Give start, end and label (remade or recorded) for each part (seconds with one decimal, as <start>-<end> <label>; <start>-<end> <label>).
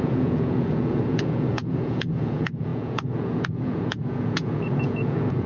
0.0-5.5 remade